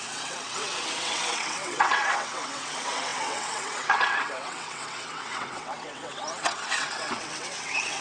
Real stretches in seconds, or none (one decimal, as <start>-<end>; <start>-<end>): none